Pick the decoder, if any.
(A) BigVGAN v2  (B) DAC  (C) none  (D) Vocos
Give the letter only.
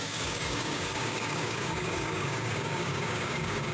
B